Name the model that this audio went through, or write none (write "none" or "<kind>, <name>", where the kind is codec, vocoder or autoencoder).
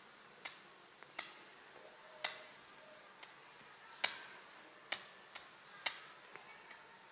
none